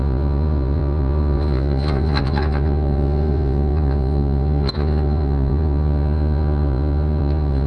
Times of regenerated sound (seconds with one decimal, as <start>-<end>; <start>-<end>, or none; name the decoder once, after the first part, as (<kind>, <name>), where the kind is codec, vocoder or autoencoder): 0.0-7.7 (vocoder, Vocos)